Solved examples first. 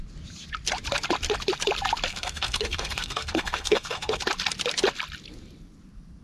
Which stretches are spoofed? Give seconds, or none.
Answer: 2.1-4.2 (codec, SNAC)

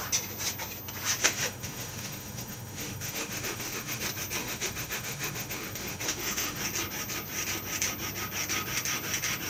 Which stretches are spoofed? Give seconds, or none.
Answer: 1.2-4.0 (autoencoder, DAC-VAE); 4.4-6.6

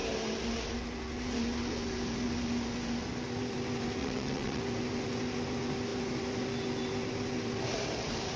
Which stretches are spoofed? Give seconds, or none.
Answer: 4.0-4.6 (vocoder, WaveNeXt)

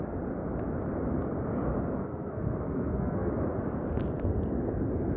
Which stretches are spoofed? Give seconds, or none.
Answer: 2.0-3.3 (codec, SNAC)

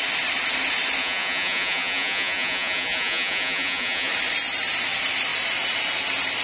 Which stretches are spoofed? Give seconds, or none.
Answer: 1.0-4.1 (vocoder, Vocos)

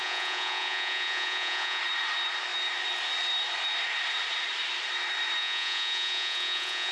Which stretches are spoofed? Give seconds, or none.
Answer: 0.0-1.8 (vocoder, Vocos); 5.4-6.9

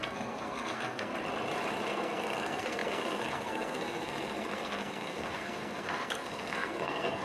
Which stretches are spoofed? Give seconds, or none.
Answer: 0.0-1.1 (codec, SNAC); 1.9-7.2

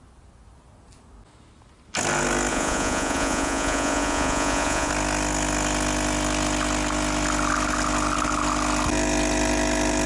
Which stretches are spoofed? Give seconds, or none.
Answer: 2.5-4.9 (vocoder, Vocos)